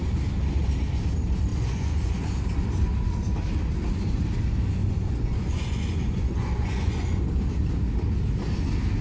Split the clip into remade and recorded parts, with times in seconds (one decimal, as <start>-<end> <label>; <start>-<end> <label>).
0.0-1.5 recorded; 1.5-2.2 remade; 2.2-4.8 recorded; 4.8-7.2 remade; 7.2-9.0 recorded